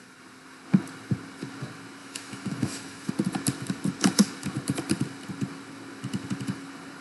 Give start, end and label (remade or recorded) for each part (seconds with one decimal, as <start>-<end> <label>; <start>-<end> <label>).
0.0-2.0 recorded; 2.0-3.1 remade; 3.1-7.0 recorded